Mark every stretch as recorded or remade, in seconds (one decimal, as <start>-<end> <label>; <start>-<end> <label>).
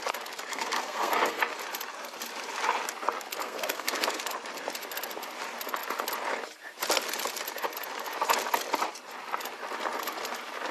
0.0-0.5 recorded; 0.5-1.4 remade; 1.4-3.4 recorded; 3.4-4.2 remade; 4.2-10.7 recorded